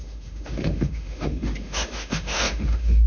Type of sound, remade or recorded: remade